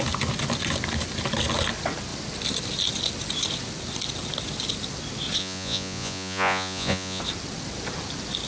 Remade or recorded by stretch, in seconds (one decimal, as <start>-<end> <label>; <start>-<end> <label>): 0.0-5.4 recorded; 5.4-7.2 remade; 7.2-8.5 recorded